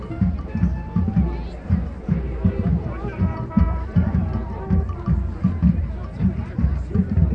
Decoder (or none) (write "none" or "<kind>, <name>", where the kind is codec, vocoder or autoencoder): vocoder, BigVGAN v2